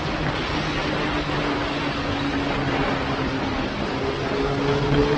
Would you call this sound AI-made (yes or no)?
no